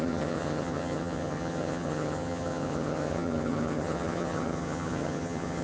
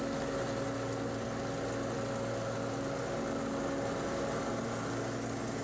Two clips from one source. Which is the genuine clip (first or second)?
second